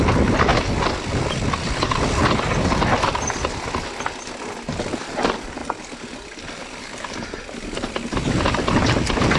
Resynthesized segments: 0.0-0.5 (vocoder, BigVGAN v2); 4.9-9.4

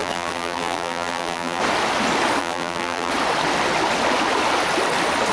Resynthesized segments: 0.0-1.6 (vocoder, BigVGAN v2); 2.4-3.1

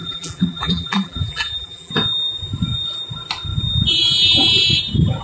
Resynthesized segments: 0.0-1.9 (vocoder, BigVGAN v2)

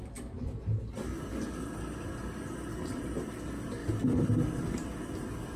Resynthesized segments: none

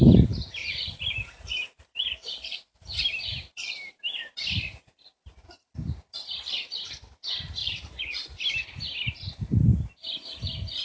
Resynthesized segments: 0.6-4.4 (vocoder, BigVGAN v2); 7.6-8.4

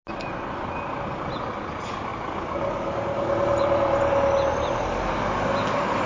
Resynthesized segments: 2.1-4.0 (vocoder, BigVGAN v2); 4.5-5.1